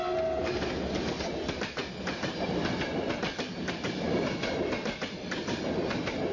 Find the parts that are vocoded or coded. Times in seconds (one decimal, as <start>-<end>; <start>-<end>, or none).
none